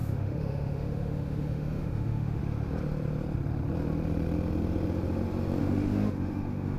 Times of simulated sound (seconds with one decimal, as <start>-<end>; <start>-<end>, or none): 0.0-2.4; 5.6-6.8